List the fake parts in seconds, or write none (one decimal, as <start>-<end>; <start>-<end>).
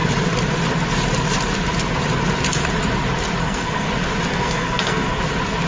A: 3.4-3.9; 4.3-5.2